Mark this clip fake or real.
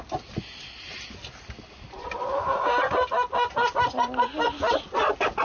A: real